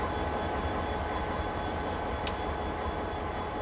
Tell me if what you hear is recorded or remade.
recorded